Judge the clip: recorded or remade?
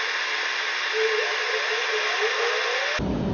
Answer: recorded